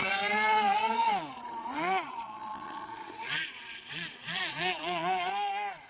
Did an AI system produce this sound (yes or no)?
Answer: yes